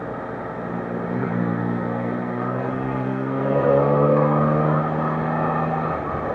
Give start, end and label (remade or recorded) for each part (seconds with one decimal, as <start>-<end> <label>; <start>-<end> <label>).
0.0-1.2 recorded; 1.2-4.8 remade; 4.8-6.3 recorded